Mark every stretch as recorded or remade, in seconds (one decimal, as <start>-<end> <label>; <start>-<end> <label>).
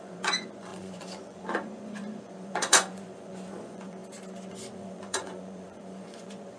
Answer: 0.0-4.0 remade; 4.0-4.5 recorded; 4.5-6.6 remade